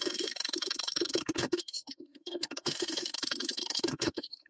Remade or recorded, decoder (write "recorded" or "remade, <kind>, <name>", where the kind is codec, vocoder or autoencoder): remade, autoencoder, DAC-VAE